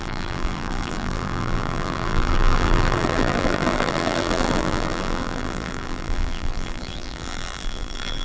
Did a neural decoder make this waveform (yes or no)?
yes